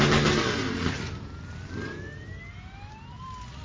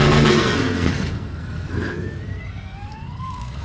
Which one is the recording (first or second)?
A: first